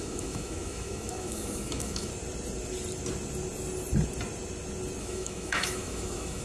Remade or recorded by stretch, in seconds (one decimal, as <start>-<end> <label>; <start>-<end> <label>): 0.0-2.1 remade; 2.1-5.0 recorded; 5.0-6.4 remade